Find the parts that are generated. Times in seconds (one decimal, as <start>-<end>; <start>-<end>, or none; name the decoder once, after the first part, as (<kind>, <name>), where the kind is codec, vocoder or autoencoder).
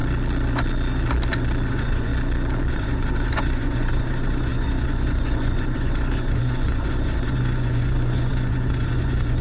1.7-2.1 (vocoder, Vocos); 2.7-9.4